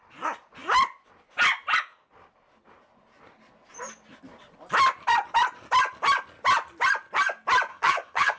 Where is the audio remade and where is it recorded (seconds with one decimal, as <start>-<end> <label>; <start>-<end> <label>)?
0.0-7.7 recorded; 7.7-8.4 remade